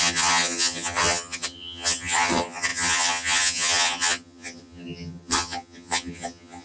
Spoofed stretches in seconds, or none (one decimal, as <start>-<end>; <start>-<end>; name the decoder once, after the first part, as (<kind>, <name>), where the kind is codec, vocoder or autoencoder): 0.0-6.6 (vocoder, HiFi-GAN)